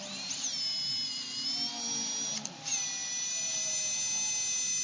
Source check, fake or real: real